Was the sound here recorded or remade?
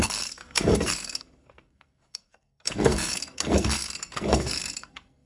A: remade